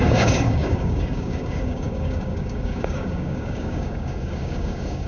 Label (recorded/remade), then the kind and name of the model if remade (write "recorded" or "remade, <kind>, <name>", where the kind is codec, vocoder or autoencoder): remade, codec, DAC